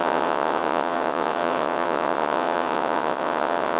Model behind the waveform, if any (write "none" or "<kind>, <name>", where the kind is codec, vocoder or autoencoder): vocoder, WaveNeXt